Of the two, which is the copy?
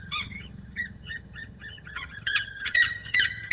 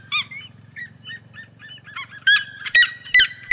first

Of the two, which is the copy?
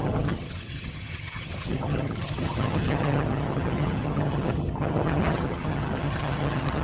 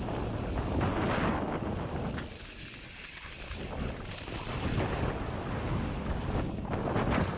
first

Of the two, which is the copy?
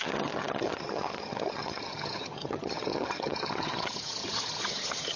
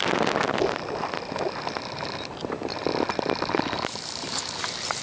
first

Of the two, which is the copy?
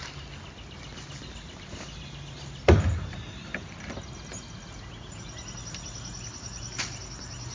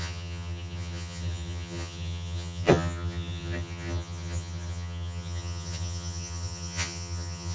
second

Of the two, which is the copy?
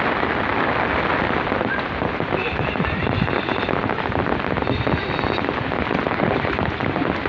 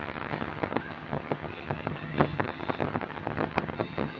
second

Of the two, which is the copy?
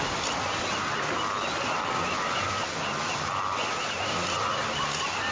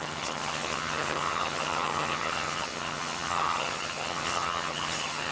second